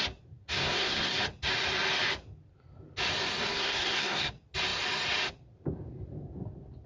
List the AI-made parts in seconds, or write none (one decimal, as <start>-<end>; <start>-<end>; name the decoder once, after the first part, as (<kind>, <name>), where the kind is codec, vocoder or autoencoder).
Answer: 0.5-1.1 (codec, SNAC); 3.5-4.3